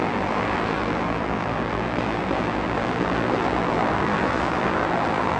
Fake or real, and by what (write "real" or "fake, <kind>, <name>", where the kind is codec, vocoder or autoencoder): fake, vocoder, BigVGAN v2